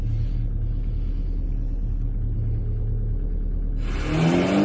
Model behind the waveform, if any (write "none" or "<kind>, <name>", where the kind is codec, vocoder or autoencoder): none